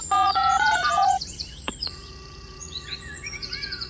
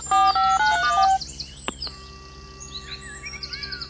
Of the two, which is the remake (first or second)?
first